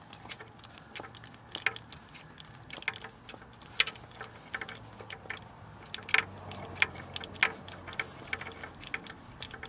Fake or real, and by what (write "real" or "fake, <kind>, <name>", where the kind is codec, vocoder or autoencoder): real